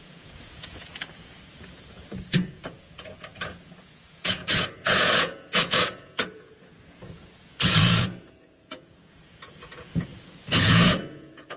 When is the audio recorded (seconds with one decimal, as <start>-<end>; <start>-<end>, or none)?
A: none